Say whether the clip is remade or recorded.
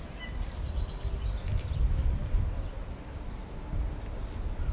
recorded